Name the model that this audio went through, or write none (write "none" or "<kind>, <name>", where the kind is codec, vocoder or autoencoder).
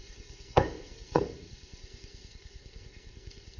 codec, SNAC